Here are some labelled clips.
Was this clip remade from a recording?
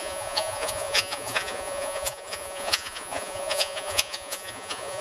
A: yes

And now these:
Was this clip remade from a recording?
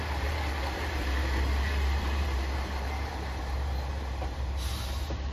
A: yes